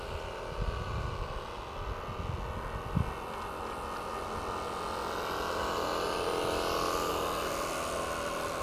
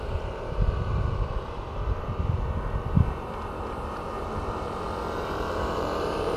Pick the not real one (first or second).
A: second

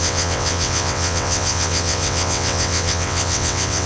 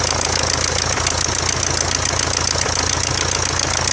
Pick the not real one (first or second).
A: first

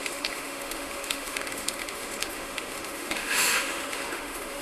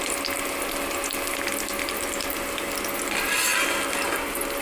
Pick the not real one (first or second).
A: first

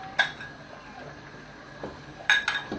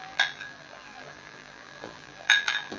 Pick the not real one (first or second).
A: second